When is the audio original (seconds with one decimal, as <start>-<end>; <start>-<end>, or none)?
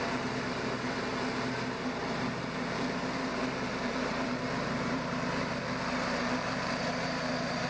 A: 1.1-2.0